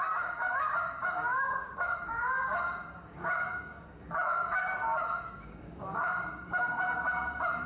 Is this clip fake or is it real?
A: fake